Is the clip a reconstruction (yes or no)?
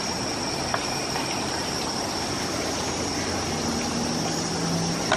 no